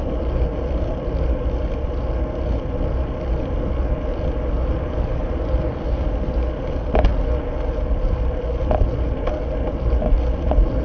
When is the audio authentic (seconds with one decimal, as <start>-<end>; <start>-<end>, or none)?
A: 0.0-10.8